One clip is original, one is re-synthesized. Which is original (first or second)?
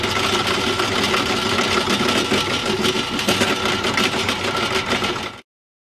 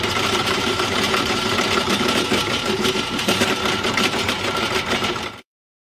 first